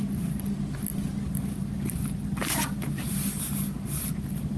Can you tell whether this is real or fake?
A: real